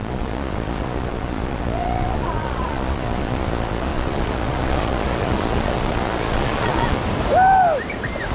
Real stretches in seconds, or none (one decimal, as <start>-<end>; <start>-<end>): 7.0-8.3